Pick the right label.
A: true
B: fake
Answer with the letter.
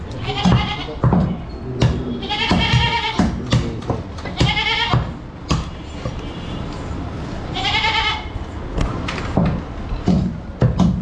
A